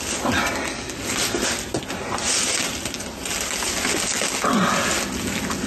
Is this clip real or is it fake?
real